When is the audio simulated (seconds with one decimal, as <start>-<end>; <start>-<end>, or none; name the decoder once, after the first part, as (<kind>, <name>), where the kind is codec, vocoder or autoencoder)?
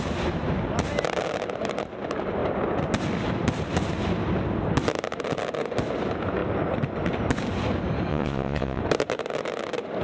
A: 8.1-8.8 (vocoder, Vocos)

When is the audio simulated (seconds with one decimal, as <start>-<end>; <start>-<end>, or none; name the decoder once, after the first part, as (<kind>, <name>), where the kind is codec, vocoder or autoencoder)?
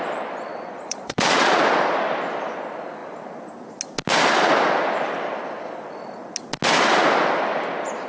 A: 0.5-1.5 (vocoder, Vocos)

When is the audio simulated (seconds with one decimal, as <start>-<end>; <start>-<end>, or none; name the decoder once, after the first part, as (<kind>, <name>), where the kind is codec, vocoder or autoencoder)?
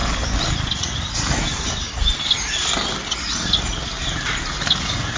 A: 0.8-1.5 (vocoder, Vocos); 4.5-5.2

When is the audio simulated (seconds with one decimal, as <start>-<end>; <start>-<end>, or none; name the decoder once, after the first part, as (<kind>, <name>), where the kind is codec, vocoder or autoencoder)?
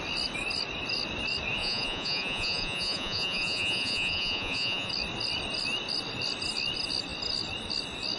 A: 1.6-4.9 (vocoder, Vocos)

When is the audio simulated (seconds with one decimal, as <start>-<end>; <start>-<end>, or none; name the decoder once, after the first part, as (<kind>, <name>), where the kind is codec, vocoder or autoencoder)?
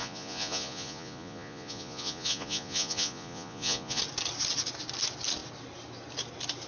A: 0.0-4.0 (vocoder, Vocos)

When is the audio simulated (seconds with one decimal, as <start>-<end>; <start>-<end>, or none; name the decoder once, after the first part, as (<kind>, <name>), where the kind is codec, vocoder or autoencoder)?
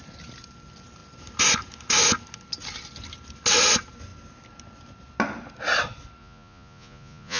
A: 6.2-7.4 (vocoder, Vocos)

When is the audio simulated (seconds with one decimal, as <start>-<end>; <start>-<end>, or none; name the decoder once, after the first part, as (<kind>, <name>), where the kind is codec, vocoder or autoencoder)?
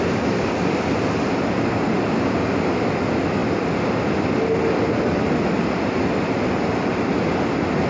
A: none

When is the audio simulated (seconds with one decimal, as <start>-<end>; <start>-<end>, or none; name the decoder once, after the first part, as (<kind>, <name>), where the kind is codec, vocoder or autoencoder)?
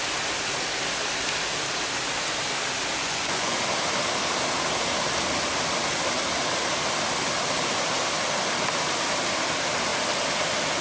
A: 3.0-3.6 (vocoder, Vocos)